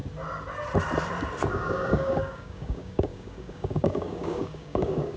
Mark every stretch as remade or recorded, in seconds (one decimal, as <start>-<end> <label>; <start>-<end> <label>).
0.0-1.5 recorded; 1.5-5.2 remade